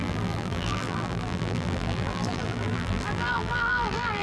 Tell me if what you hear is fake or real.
fake